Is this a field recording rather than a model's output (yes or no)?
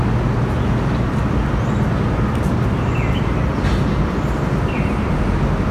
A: yes